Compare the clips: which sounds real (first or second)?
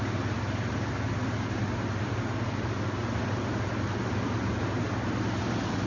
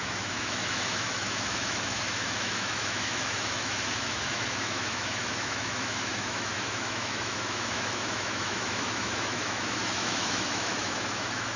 first